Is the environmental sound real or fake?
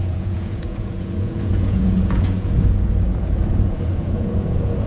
fake